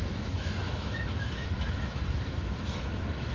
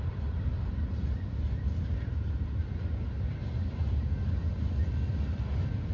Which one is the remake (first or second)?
first